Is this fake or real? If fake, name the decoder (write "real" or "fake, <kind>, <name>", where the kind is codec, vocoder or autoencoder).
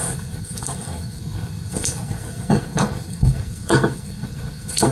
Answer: fake, codec, SNAC